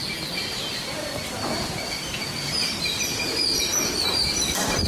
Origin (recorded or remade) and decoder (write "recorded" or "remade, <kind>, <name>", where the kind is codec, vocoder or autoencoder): remade, vocoder, BigVGAN v2